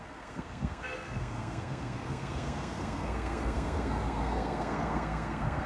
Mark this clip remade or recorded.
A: remade